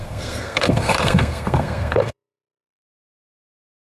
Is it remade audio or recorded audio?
remade